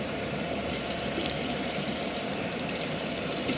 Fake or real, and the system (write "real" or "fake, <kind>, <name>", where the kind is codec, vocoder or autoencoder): fake, vocoder, BigVGAN v2